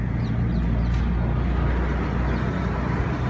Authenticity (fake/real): real